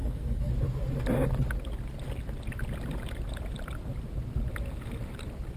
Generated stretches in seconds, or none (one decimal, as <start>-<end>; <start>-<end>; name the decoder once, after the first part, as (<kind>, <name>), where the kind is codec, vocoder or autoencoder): 0.0-0.5 (codec, SNAC)